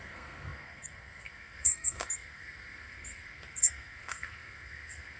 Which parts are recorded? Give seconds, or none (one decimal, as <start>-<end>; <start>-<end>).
none